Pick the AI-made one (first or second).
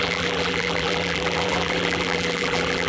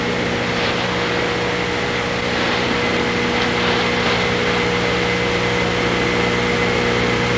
first